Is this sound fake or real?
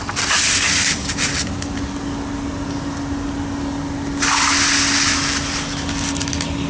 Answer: real